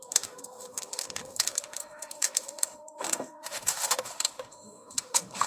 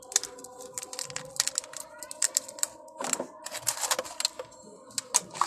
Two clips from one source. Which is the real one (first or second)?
second